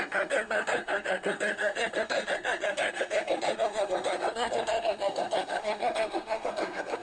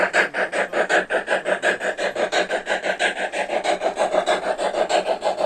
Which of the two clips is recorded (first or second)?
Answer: second